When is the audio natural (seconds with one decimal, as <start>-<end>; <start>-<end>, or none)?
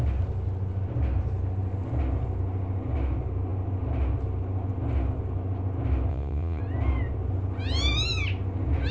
0.0-6.1; 6.6-8.9